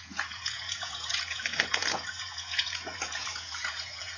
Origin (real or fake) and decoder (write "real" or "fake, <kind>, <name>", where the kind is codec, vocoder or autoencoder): fake, vocoder, Vocos